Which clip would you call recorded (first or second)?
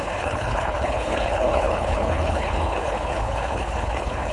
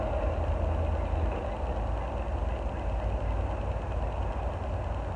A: second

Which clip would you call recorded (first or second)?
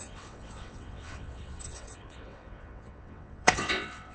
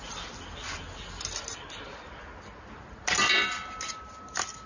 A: second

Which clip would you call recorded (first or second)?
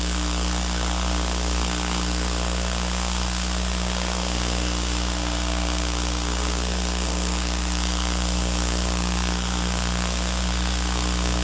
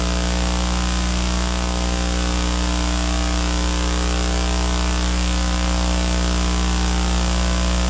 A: second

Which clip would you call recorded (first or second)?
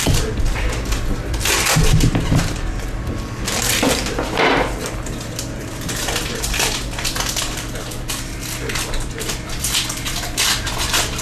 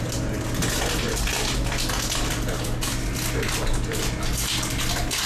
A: second